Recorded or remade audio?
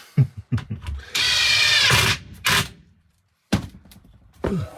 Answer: remade